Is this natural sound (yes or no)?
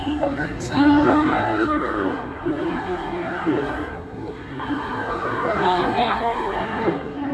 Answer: no